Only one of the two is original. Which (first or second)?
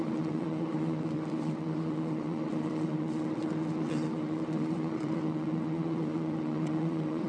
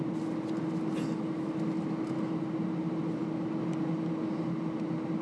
second